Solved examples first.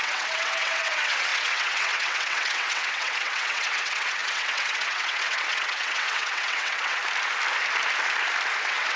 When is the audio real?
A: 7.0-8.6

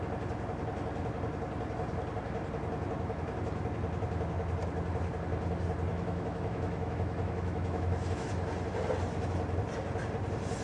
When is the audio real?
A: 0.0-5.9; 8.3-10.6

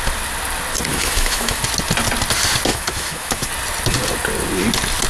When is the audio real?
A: 0.0-0.9; 1.6-2.7; 3.5-5.1

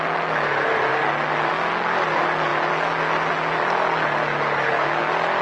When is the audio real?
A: 0.0-5.4

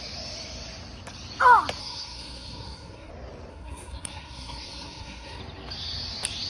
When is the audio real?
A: 0.0-1.8; 3.1-3.5; 5.4-6.5

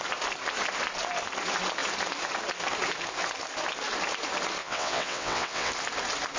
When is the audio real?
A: 0.0-4.6; 5.7-6.4

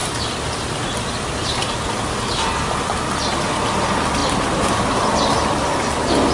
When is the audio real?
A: 0.0-6.3